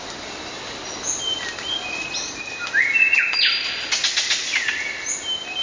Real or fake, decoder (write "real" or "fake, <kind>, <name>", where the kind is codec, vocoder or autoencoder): real